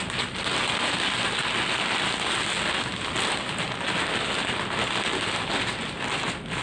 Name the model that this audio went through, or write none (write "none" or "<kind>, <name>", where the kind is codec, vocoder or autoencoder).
none